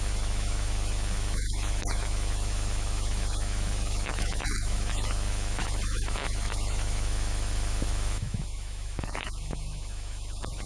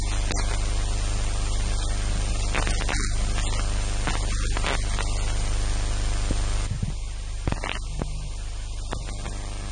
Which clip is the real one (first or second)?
second